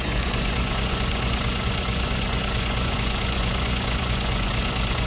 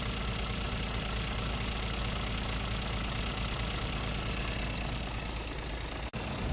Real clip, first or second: second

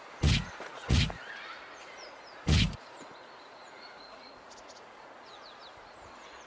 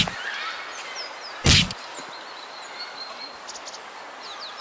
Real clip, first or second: second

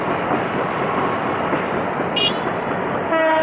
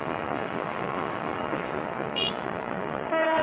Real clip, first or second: first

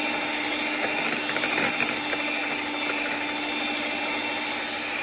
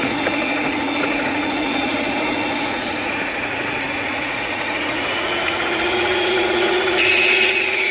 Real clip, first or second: first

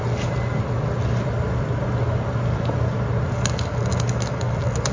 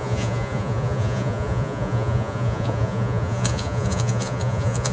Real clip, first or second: first